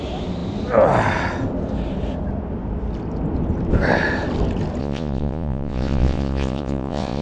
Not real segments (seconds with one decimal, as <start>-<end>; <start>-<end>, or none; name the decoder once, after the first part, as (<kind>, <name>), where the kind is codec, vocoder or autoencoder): 4.8-7.2 (vocoder, Vocos)